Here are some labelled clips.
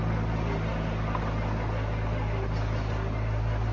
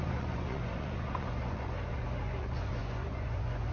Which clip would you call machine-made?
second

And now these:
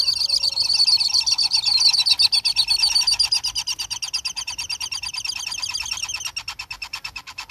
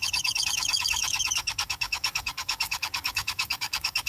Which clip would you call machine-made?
second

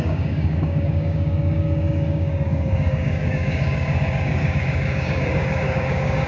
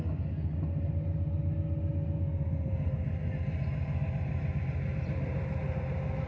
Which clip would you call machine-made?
first